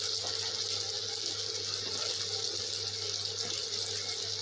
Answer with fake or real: real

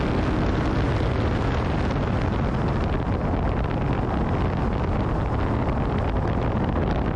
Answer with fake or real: real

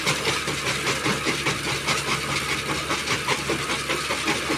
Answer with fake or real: real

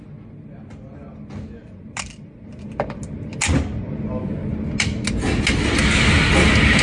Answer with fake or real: real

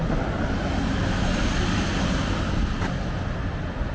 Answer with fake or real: real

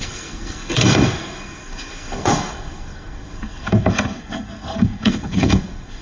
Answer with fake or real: fake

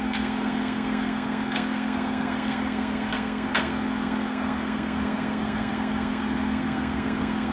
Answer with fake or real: fake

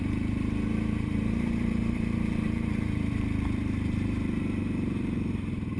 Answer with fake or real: fake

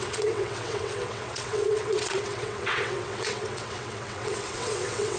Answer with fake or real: fake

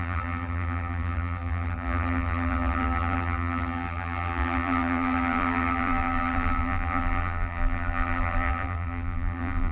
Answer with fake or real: fake